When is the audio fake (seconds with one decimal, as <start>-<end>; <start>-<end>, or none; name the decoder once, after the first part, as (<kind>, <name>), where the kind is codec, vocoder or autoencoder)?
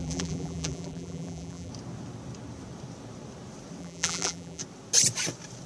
0.0-1.7 (vocoder, BigVGAN v2); 3.8-4.6